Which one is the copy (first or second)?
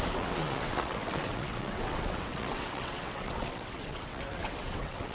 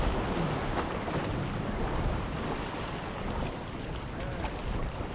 first